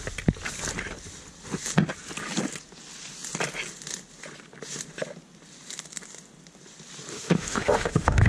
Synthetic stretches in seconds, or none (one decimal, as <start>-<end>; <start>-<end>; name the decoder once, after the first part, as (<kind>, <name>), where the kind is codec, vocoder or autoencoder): 7.1-8.3 (autoencoder, DAC-VAE)